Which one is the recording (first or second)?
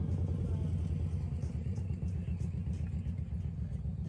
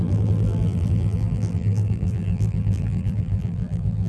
first